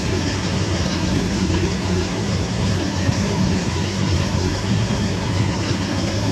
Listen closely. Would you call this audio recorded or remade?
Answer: remade